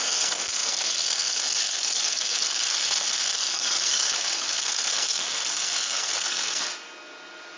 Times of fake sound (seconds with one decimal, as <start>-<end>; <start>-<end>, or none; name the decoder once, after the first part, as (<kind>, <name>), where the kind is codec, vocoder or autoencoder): 0.0-6.7 (codec, SNAC)